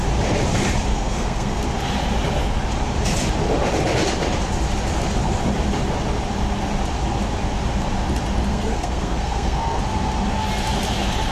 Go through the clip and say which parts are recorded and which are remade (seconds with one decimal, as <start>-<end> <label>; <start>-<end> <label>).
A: 0.0-0.9 recorded; 0.9-1.6 remade; 1.6-8.5 recorded; 8.5-9.8 remade; 9.8-11.3 recorded